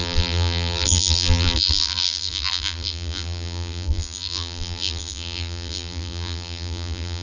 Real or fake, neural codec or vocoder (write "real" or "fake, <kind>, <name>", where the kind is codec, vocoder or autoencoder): fake, vocoder, BigVGAN v2